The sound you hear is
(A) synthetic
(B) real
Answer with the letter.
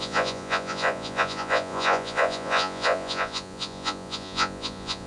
A